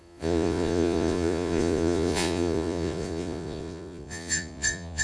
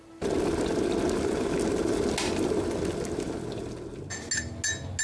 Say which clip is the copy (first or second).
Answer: first